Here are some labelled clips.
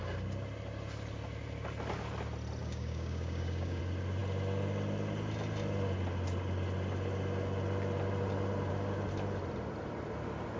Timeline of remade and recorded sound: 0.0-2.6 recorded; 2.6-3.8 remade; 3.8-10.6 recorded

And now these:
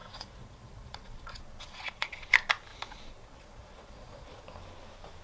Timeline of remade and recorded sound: 0.0-2.3 remade; 2.3-2.7 recorded; 2.7-4.4 remade; 4.4-5.2 recorded

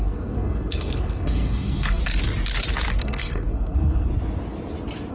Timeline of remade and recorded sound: 0.0-2.0 remade; 2.0-3.0 recorded; 3.0-4.1 remade; 4.1-5.1 recorded

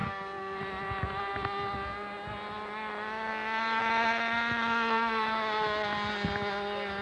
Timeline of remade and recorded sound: 0.0-0.6 remade; 0.6-3.3 recorded; 3.3-3.8 remade; 3.8-7.0 recorded

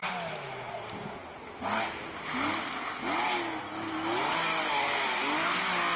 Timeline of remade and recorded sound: 0.0-4.5 recorded; 4.5-5.2 remade; 5.2-6.0 recorded

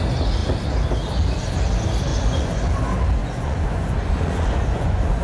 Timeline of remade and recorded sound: 0.0-2.1 recorded; 2.1-2.8 remade; 2.8-3.2 recorded; 3.2-5.2 remade

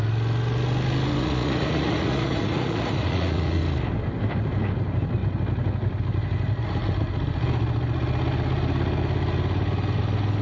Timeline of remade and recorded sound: 0.0-1.2 recorded; 1.2-3.6 remade; 3.6-10.4 recorded